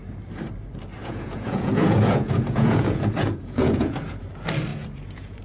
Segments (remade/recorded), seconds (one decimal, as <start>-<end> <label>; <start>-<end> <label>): 0.0-1.0 recorded; 1.0-4.2 remade; 4.2-4.7 recorded; 4.7-5.4 remade